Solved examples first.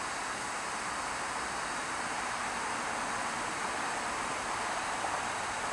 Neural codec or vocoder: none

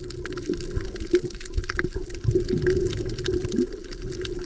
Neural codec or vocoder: none